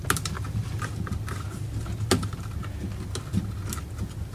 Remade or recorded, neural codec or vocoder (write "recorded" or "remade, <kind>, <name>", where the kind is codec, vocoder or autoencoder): recorded